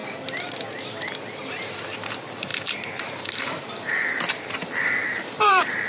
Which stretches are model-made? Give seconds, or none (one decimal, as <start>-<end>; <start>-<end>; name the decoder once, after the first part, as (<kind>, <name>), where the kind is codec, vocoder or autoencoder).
1.5-5.9 (vocoder, BigVGAN v2)